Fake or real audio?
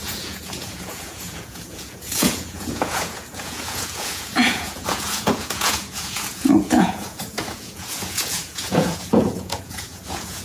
fake